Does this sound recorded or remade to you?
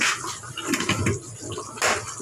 recorded